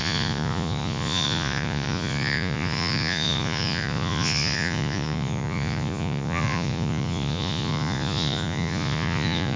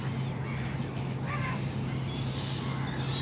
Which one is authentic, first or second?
second